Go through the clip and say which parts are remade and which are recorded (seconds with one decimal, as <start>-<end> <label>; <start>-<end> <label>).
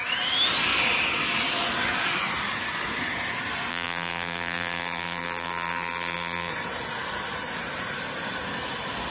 0.0-3.7 recorded; 3.7-6.5 remade; 6.5-9.1 recorded